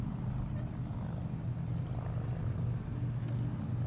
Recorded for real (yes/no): yes